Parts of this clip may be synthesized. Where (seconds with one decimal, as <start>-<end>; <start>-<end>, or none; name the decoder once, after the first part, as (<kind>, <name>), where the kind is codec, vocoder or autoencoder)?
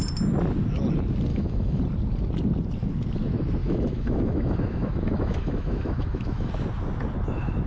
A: 1.3-1.8 (autoencoder, DAC-VAE); 3.6-6.5